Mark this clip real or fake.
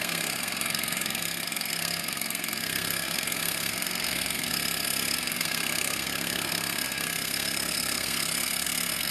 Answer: fake